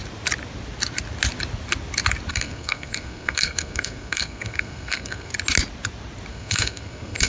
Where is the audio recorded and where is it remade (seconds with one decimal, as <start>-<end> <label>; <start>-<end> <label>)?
0.0-2.3 recorded; 2.3-5.3 remade; 5.3-6.3 recorded; 6.3-7.3 remade